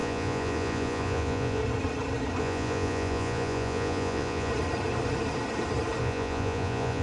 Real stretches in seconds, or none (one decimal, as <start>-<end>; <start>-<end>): 1.6-2.4; 4.5-6.0